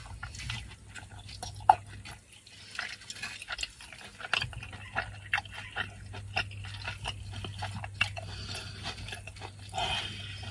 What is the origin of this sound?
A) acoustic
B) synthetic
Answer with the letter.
A